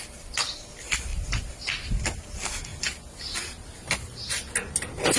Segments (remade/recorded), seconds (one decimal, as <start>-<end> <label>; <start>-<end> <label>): 0.0-5.2 recorded